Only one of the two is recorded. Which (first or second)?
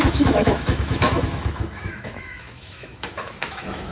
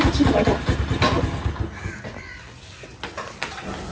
second